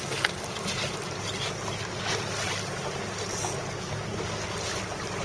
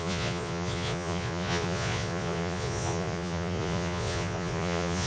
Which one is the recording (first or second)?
first